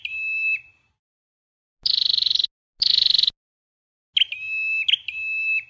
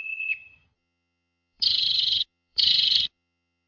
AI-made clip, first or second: second